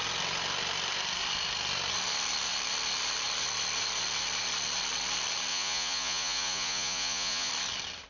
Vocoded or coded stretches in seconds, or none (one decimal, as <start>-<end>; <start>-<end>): 5.5-7.5